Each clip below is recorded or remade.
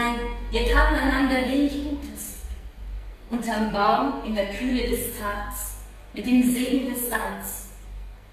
remade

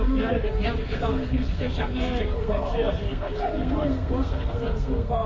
remade